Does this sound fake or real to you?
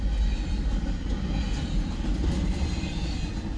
real